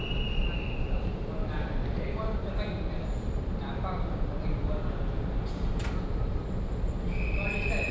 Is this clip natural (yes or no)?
no